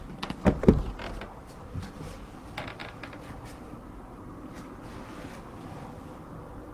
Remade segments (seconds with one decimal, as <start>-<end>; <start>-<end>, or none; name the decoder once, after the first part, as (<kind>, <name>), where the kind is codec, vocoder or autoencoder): none